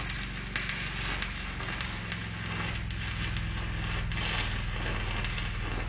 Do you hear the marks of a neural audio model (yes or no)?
no